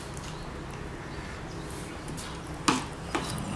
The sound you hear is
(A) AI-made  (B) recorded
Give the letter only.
B